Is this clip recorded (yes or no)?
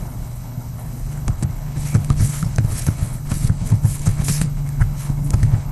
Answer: no